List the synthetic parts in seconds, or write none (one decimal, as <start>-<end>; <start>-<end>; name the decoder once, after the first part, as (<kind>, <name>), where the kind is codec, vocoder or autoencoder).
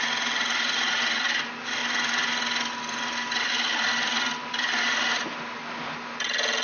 none